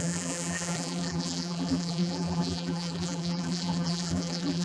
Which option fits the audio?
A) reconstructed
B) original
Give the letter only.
A